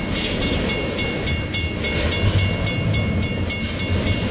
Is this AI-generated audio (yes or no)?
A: no